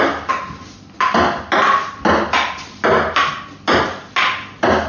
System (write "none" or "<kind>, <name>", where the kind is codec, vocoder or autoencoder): none